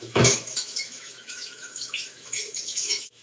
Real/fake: fake